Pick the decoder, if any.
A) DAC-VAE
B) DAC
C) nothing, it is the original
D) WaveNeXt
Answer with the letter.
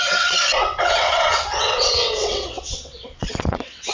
D